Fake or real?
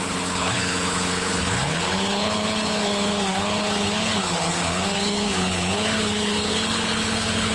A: fake